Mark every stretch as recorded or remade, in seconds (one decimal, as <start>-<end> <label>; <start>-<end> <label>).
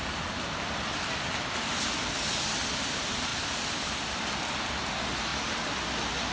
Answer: 0.0-6.3 recorded